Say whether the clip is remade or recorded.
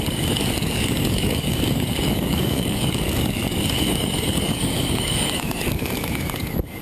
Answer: remade